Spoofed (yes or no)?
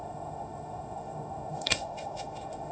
yes